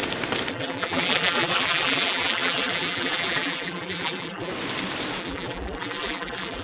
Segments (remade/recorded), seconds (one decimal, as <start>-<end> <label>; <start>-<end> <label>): 0.0-0.5 recorded; 0.5-4.5 remade; 4.5-5.2 recorded; 5.2-6.6 remade